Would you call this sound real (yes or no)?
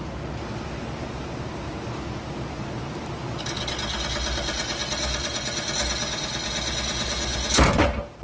yes